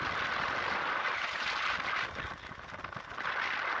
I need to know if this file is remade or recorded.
recorded